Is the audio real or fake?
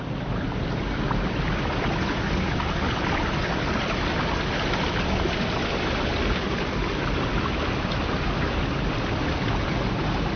real